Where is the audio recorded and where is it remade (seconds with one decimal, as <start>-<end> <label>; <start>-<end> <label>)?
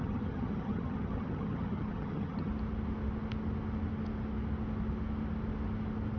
0.0-2.5 remade; 2.5-6.2 recorded